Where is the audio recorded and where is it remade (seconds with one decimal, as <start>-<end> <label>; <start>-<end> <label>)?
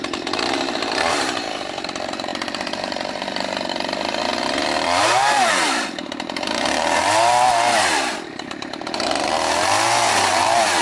0.0-4.3 remade; 4.3-5.0 recorded; 5.0-7.0 remade; 7.0-8.1 recorded; 8.1-9.3 remade; 9.3-10.1 recorded; 10.1-10.8 remade